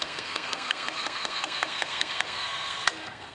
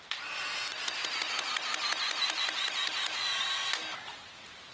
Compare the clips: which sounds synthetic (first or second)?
first